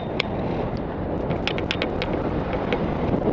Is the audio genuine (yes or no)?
yes